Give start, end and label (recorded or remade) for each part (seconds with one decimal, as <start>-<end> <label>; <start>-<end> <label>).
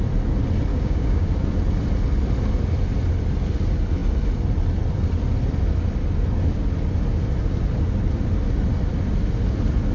0.0-0.7 recorded; 0.7-1.3 remade; 1.3-9.9 recorded